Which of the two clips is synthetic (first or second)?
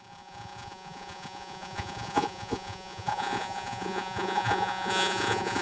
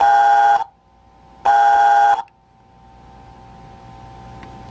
first